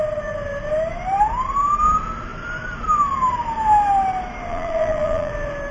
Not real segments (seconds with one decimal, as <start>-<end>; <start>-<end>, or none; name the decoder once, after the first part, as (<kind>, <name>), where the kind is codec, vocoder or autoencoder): 4.5-5.3 (vocoder, Vocos)